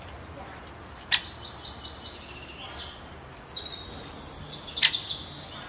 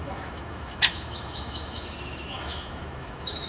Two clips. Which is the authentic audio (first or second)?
first